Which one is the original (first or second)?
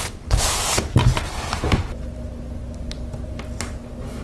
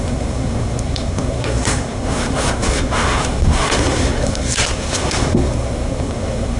first